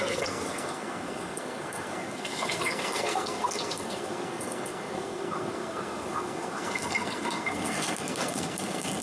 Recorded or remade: remade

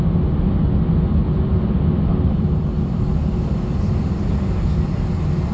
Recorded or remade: recorded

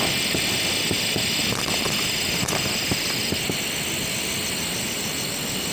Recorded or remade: recorded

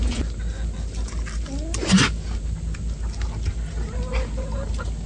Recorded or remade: recorded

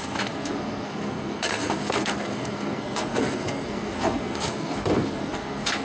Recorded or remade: remade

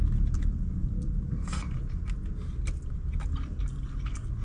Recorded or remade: recorded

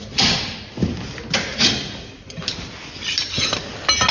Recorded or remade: recorded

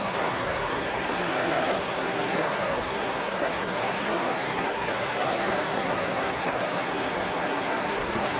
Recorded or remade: remade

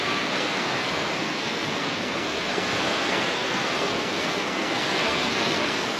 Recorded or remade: remade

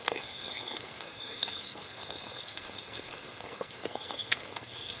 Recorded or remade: remade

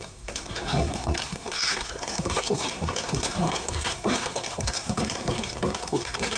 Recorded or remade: remade